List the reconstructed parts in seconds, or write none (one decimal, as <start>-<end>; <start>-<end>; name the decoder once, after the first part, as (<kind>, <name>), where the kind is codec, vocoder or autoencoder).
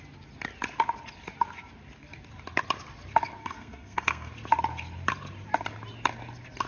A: 3.4-4.3 (codec, SNAC)